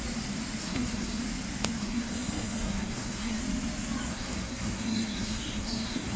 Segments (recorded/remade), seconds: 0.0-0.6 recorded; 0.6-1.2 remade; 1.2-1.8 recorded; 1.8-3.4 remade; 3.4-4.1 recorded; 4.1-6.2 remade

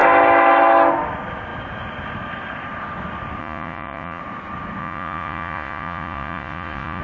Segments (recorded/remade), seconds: 0.0-3.4 recorded; 3.4-4.2 remade; 4.2-4.8 recorded; 4.8-7.0 remade

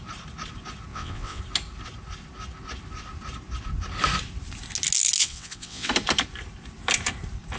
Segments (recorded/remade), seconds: 0.0-0.9 recorded; 0.9-1.4 remade; 1.4-5.2 recorded; 5.2-5.9 remade; 5.9-7.6 recorded

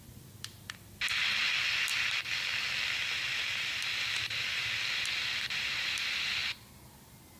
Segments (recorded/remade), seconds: 0.0-7.4 recorded

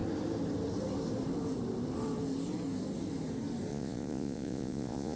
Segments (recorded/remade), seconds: 0.0-3.7 recorded; 3.7-5.2 remade

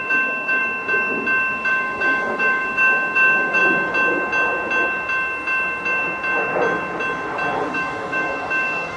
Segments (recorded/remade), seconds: 0.0-0.6 remade; 0.6-1.7 recorded; 1.7-3.6 remade; 3.6-7.7 recorded; 7.7-9.0 remade

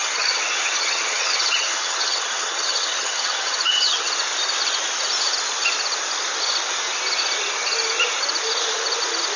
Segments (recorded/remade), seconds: 0.0-4.1 remade; 4.1-9.4 recorded